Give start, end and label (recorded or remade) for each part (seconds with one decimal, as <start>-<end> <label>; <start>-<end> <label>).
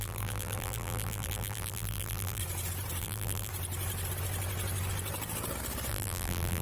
0.0-2.4 remade; 2.4-3.0 recorded; 3.0-3.5 remade; 3.5-5.9 recorded; 5.9-6.6 remade